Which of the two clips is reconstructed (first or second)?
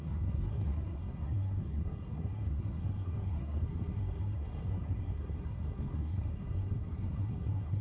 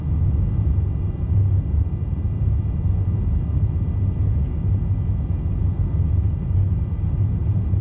first